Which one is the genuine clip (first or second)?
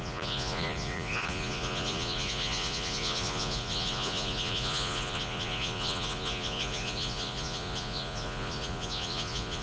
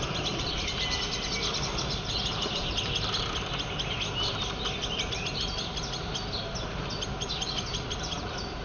second